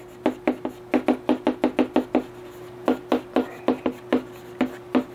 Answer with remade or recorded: recorded